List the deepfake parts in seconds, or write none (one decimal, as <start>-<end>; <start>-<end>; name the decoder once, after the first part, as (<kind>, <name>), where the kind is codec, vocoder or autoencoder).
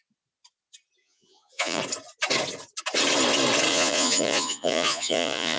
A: 1.0-1.8 (vocoder, Vocos); 3.7-5.6